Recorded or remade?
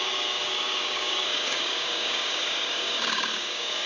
remade